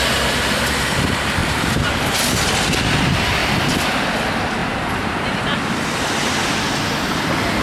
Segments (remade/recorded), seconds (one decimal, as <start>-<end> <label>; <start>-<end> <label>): 0.0-1.4 recorded; 1.4-2.1 remade; 2.1-4.6 recorded; 4.6-5.4 remade; 5.4-7.6 recorded